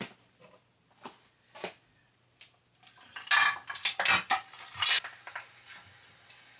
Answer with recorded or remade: recorded